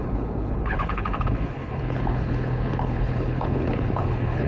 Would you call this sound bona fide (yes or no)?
no